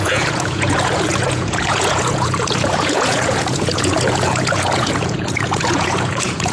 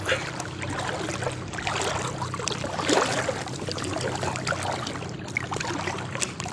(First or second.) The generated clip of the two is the first